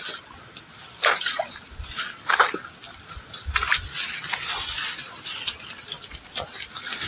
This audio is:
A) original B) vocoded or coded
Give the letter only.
A